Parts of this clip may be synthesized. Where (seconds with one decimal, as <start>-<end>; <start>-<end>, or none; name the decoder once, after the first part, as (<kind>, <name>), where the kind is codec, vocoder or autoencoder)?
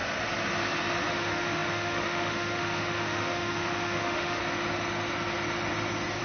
1.1-4.4 (autoencoder, DAC-VAE)